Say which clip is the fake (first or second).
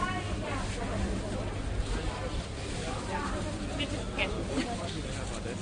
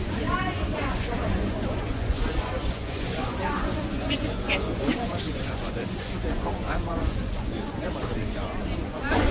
second